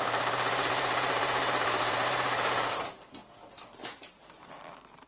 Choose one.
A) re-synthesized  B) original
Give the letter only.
A